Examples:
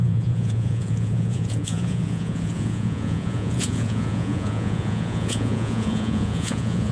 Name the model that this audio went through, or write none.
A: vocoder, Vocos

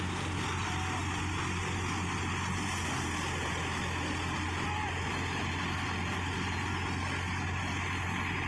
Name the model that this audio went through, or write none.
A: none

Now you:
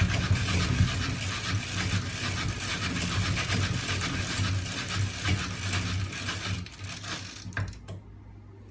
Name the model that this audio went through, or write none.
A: none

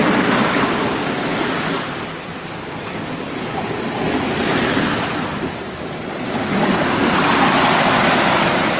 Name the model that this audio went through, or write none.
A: none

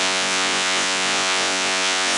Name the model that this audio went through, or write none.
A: vocoder, Vocos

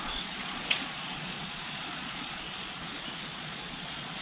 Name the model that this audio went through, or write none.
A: vocoder, Vocos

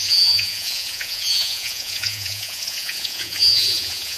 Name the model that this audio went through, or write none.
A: vocoder, Vocos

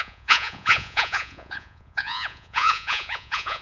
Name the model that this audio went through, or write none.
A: vocoder, Vocos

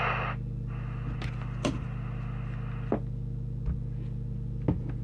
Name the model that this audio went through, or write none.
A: none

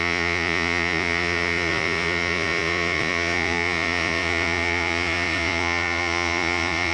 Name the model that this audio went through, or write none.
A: vocoder, Vocos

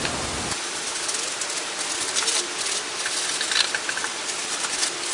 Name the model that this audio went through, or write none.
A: none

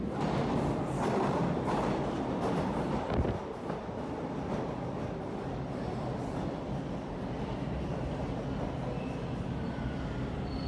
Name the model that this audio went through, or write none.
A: none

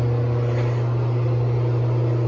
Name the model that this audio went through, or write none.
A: none